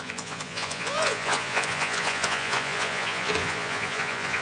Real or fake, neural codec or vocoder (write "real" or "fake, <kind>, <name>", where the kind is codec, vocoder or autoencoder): fake, vocoder, Vocos